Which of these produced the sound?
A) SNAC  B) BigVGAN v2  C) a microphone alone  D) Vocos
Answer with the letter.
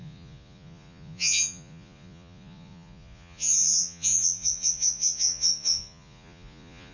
D